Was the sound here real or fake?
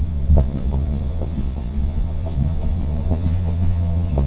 fake